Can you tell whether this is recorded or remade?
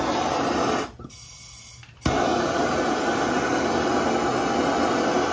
recorded